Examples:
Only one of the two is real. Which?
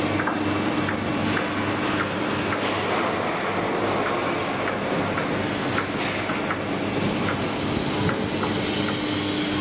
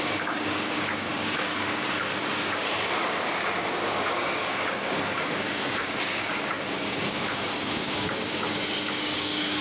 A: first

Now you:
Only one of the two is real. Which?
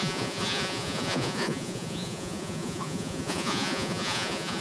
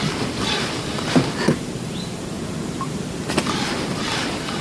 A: second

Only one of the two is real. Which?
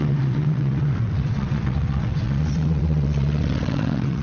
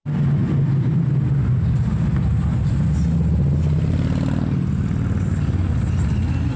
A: second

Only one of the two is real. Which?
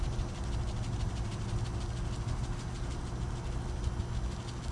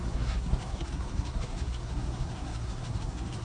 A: first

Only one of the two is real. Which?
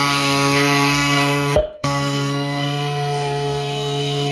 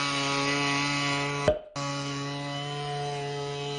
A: second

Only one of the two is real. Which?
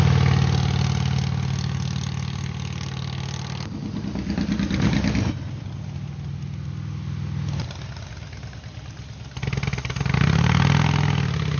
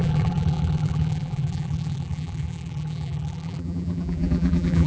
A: first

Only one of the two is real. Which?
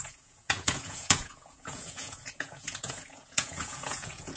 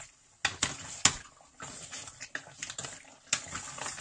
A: second